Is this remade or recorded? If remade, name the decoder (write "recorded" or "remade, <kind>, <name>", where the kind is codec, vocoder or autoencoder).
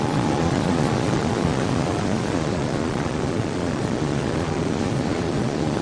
remade, vocoder, Vocos